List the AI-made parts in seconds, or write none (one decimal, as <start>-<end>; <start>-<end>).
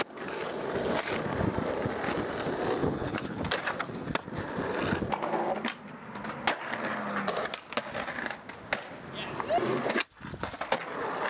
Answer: 2.8-3.4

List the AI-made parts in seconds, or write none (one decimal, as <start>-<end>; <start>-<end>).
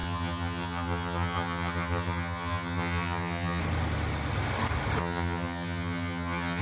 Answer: 0.0-3.6; 5.0-6.6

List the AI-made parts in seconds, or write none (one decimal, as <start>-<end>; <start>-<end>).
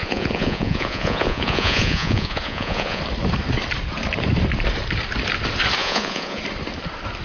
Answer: 0.0-3.0; 5.8-6.4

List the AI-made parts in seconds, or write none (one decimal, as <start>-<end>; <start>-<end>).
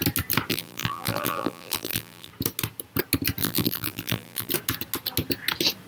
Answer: 0.5-2.3; 3.4-4.5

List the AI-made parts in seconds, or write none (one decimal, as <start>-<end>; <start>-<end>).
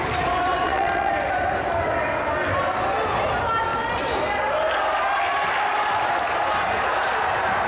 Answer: 0.5-1.1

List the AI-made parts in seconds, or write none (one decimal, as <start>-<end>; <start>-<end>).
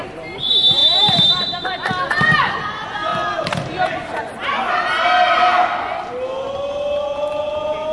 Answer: 0.8-1.7; 3.1-3.7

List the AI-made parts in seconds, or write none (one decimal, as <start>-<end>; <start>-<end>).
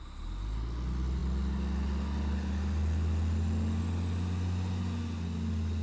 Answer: none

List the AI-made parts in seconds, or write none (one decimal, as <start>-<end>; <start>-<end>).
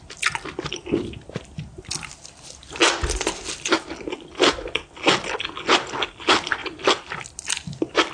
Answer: none